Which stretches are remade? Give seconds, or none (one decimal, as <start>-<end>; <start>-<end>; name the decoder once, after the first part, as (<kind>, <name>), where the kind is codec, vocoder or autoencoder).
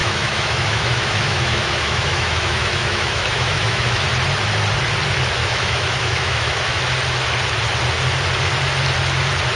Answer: 0.0-4.0 (autoencoder, DAC-VAE); 5.4-6.8